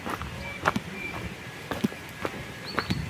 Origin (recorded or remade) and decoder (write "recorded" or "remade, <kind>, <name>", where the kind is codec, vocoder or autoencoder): remade, vocoder, BigVGAN v2